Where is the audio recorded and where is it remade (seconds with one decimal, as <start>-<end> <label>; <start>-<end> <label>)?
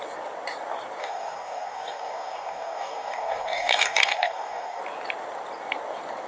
0.0-1.0 recorded; 1.0-4.8 remade; 4.8-6.3 recorded